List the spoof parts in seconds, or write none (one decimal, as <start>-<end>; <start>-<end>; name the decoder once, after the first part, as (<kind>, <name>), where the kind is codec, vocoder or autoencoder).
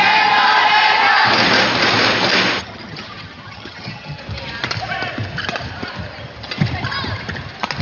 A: 2.6-4.2 (vocoder, HiFi-GAN)